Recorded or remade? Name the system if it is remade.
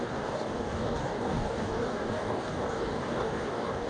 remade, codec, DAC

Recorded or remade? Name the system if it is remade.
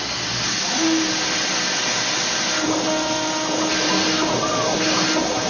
recorded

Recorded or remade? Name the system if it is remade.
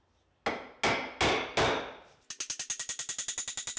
recorded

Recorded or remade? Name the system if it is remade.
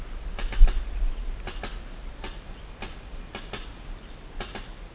recorded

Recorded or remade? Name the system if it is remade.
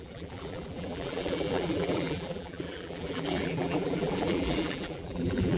remade, vocoder, BigVGAN v2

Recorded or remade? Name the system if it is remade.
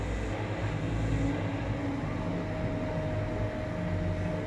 recorded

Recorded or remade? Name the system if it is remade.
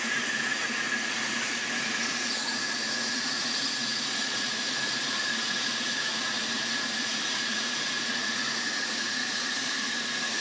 remade, vocoder, Vocos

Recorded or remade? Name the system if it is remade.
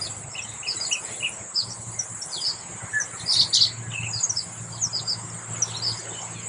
recorded